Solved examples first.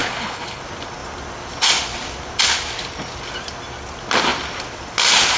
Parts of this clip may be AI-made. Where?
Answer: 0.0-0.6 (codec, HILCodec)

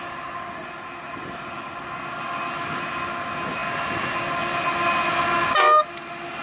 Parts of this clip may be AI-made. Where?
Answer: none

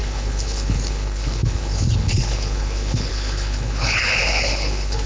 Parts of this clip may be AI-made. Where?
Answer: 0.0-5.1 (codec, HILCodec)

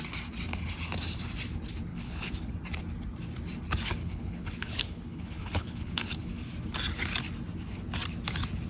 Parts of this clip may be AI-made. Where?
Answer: 1.9-2.5 (codec, HILCodec); 4.0-6.3

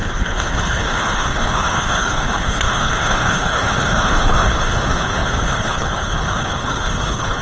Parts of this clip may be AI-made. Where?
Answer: 0.0-7.4 (codec, HILCodec)

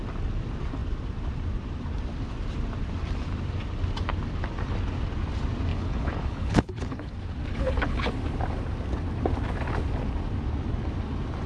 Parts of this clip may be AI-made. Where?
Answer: 5.7-7.1 (codec, HILCodec); 7.5-8.1

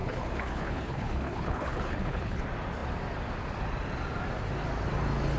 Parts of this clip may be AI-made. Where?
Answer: 0.0-2.4 (codec, HILCodec)

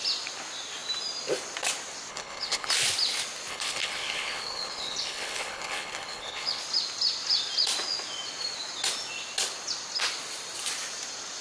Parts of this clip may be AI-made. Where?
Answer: 2.1-2.7 (codec, HILCodec); 3.5-6.6